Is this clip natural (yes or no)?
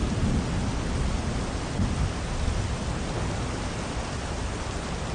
yes